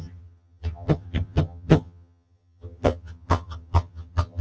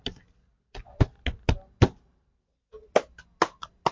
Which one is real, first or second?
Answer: second